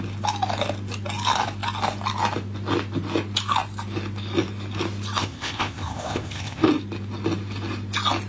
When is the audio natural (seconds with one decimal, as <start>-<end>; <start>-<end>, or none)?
0.0-5.2; 6.7-8.3